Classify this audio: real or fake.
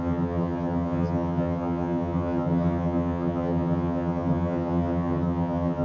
fake